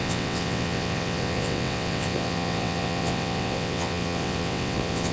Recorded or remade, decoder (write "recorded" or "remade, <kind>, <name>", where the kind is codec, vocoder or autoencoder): remade, vocoder, WaveNeXt